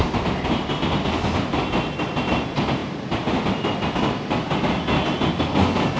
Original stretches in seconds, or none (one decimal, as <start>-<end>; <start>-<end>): 0.0-2.8; 4.3-6.0